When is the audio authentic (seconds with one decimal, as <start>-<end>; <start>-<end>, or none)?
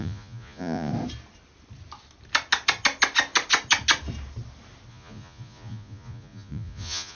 0.9-4.9